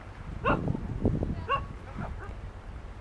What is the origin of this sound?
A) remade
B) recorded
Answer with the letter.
B